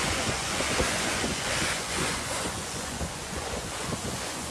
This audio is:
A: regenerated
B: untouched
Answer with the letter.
A